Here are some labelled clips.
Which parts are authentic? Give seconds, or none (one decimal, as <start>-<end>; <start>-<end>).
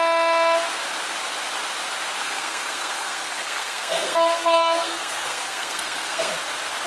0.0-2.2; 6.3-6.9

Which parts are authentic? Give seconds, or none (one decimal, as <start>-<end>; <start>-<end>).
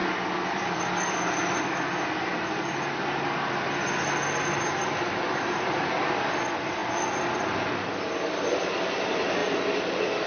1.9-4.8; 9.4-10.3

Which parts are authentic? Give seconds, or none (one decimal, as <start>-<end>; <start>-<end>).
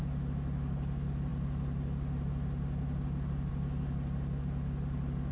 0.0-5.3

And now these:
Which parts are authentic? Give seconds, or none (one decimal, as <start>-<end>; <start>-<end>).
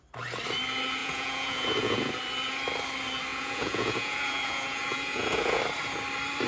0.0-1.0; 2.1-3.3; 5.6-6.5